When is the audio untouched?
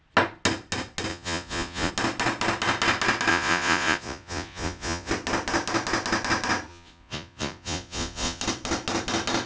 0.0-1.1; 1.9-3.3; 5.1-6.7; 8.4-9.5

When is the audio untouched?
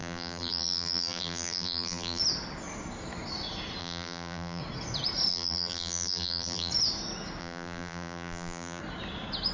2.2-3.8; 4.6-5.3; 6.7-7.4; 8.8-9.5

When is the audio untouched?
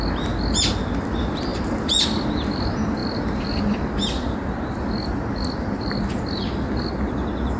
0.0-1.5; 2.0-7.6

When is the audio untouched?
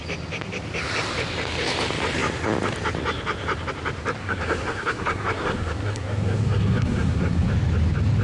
0.0-4.2; 7.5-8.2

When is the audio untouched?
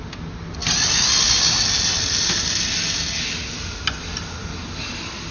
0.0-5.3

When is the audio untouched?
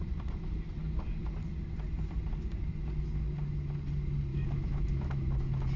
0.0-4.3; 5.3-5.8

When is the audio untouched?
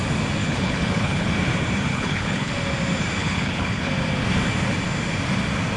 0.0-0.4; 1.3-1.9; 2.5-3.2; 3.9-5.8